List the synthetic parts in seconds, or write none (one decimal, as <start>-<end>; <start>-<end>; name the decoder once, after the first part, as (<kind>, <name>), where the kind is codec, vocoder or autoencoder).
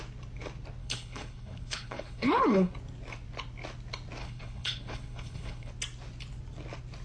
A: 0.8-2.7 (codec, HILCodec); 4.2-5.7